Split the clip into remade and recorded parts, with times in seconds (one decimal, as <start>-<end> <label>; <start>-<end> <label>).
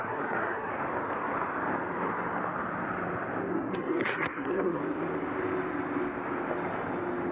0.0-0.7 remade; 0.7-3.5 recorded; 3.5-4.8 remade; 4.8-7.3 recorded